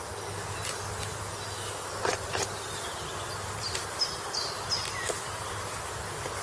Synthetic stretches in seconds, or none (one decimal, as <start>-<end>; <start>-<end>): none